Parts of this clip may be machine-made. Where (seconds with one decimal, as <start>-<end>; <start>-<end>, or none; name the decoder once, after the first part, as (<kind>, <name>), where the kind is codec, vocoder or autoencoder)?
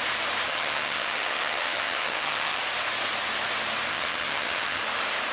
0.5-2.6 (vocoder, HiFi-GAN); 3.9-4.8